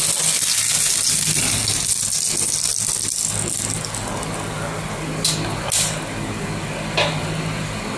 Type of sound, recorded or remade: recorded